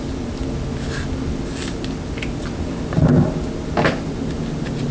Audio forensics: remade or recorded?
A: recorded